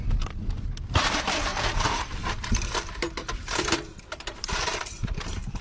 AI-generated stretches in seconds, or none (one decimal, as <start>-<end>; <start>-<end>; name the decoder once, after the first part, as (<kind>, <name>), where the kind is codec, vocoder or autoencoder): 1.5-4.8 (vocoder, BigVGAN v2)